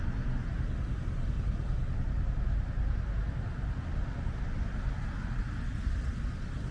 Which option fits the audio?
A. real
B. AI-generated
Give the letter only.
A